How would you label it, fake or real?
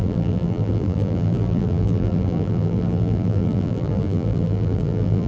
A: fake